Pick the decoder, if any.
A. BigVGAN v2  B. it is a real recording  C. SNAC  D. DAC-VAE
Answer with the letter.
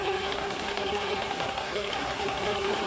C